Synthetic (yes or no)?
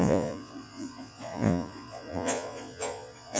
yes